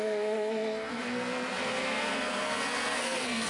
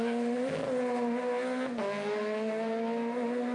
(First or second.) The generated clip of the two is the first